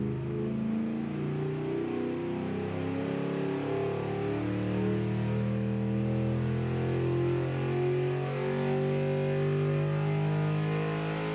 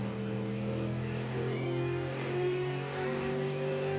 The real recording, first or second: first